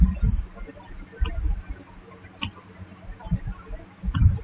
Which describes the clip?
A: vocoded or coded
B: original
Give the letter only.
B